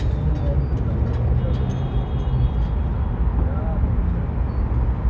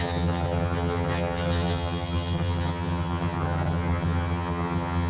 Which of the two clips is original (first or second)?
first